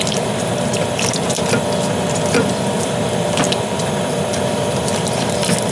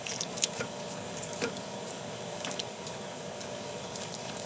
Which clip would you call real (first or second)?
first